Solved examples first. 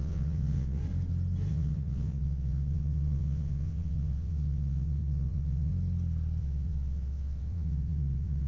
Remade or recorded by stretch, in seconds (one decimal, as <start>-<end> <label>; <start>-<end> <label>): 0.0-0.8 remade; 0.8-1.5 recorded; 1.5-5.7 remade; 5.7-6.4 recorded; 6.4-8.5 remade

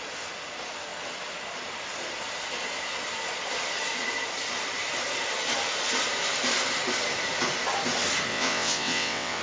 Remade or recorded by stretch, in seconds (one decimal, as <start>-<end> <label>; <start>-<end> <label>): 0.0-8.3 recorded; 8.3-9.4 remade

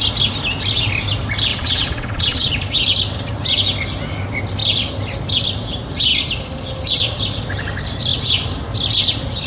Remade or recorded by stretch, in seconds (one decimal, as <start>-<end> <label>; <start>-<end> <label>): 0.0-1.5 recorded; 1.5-2.5 remade; 2.5-9.5 recorded